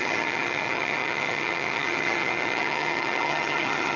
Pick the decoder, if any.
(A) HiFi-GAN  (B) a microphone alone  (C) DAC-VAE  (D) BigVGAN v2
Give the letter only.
A